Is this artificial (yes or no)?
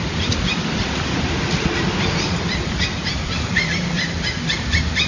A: yes